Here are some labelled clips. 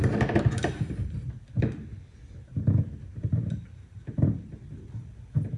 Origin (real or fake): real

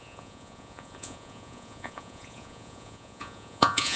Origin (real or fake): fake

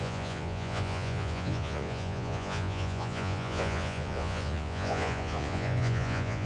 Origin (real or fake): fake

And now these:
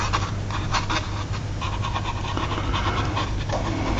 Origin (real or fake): real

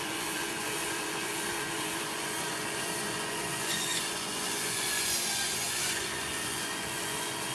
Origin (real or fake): fake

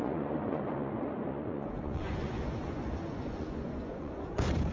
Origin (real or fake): fake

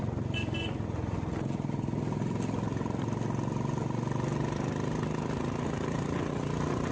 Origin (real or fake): real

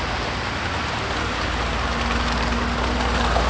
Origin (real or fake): real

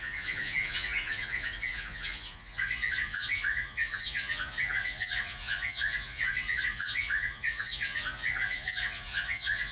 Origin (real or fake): fake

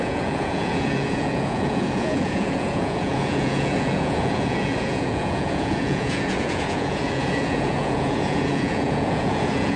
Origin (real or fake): fake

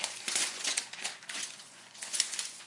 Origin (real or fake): fake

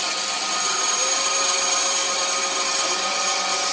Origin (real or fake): real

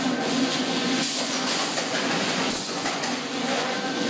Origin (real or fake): fake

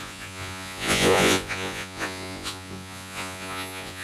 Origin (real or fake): fake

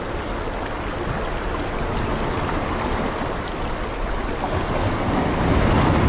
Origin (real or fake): real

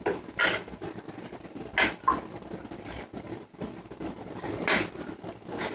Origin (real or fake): real